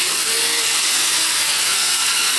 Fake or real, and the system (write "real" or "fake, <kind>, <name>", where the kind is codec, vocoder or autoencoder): fake, codec, SNAC